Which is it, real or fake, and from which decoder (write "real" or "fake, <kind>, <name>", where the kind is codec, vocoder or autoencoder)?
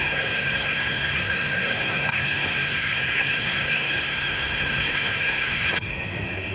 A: fake, codec, SNAC